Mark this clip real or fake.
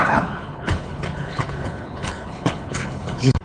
fake